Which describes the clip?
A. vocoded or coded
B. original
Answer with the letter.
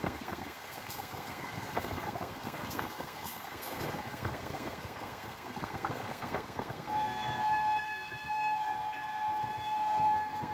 A